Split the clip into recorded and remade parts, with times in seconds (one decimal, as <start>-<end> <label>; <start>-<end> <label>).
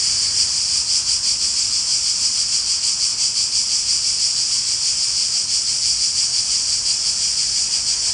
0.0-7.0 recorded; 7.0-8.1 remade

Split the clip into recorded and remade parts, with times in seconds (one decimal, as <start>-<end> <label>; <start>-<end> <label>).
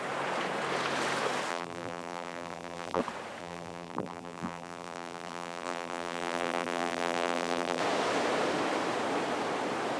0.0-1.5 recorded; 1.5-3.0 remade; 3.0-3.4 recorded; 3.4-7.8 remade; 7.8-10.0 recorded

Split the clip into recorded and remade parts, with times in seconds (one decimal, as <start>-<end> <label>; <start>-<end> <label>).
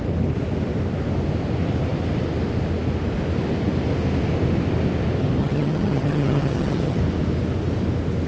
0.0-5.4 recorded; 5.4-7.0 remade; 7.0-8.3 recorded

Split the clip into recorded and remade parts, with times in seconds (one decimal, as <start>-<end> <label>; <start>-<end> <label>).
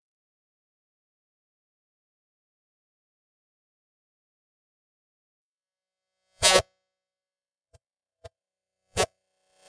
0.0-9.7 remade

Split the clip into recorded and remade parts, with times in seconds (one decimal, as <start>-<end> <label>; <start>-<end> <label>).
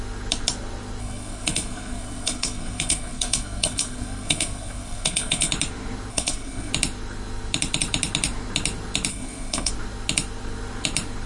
0.0-1.0 recorded; 1.0-5.5 remade; 5.5-6.1 recorded; 6.1-6.7 remade; 6.7-9.1 recorded; 9.1-9.7 remade; 9.7-11.3 recorded